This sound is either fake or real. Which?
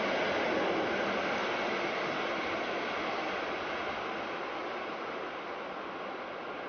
real